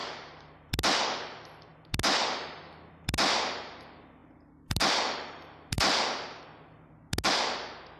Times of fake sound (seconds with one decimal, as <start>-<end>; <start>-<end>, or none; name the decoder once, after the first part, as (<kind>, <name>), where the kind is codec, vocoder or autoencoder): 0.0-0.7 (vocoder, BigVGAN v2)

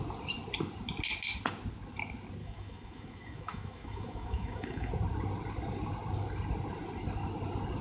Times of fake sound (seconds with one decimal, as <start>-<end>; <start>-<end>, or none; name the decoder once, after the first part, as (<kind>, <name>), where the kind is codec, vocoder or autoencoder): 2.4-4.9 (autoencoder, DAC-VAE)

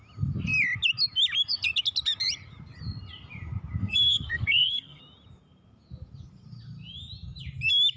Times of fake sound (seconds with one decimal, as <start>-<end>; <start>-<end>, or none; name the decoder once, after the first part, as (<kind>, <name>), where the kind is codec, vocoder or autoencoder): 3.8-5.0 (codec, SNAC)

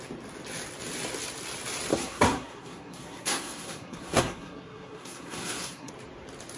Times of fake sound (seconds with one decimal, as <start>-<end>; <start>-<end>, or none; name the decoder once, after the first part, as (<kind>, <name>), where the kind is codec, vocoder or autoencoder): 1.9-5.9 (codec, SNAC)

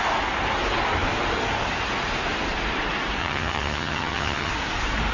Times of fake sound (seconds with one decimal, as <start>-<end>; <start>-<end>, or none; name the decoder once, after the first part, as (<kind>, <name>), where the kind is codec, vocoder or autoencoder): 3.2-4.5 (vocoder, HiFi-GAN)

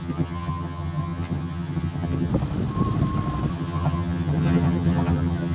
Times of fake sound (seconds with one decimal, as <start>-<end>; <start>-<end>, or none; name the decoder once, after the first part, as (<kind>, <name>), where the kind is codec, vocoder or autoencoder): 0.0-2.3 (vocoder, HiFi-GAN); 3.5-5.5